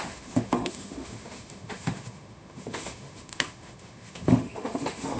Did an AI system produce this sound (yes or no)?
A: yes